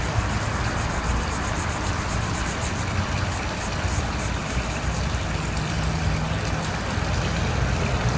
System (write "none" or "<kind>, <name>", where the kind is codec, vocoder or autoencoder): none